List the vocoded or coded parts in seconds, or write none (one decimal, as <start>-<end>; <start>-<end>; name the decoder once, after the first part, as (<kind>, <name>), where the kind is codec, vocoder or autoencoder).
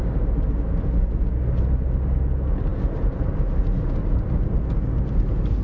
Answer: none